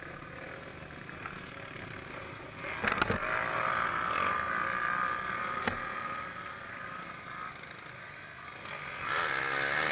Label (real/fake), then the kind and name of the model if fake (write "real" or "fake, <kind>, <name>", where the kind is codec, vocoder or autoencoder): real